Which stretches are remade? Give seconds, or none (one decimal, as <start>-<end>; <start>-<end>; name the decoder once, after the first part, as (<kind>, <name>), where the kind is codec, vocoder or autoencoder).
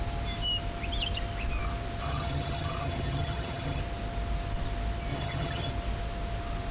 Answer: 2.0-3.8 (vocoder, HiFi-GAN); 5.1-5.7